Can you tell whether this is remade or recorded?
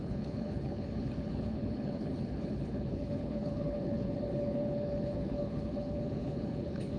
remade